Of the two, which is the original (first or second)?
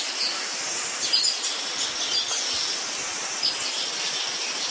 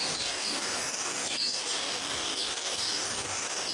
first